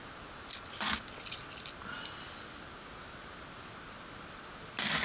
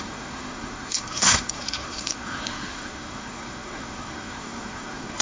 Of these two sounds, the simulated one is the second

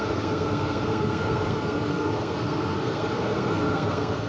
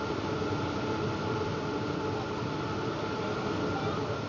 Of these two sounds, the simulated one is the first